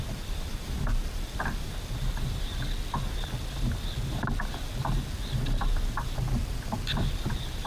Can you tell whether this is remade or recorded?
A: recorded